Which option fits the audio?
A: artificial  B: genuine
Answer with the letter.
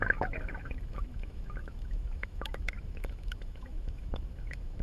A